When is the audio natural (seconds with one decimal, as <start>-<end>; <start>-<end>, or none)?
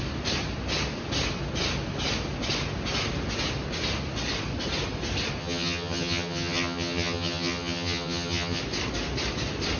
0.0-5.4; 8.6-9.8